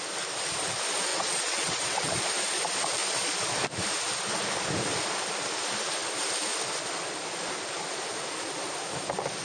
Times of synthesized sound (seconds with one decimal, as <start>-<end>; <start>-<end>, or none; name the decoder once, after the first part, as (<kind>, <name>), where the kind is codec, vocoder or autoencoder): 1.1-2.1 (vocoder, WaveNeXt)